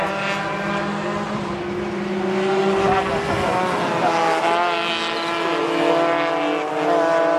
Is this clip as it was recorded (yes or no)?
yes